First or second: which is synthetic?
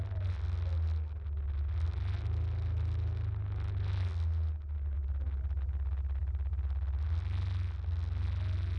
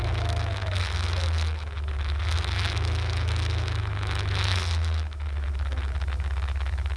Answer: second